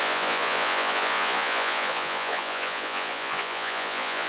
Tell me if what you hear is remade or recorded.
remade